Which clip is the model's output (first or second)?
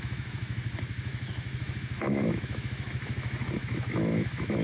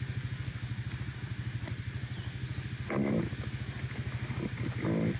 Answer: first